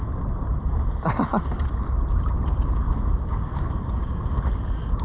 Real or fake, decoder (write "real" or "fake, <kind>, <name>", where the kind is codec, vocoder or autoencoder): real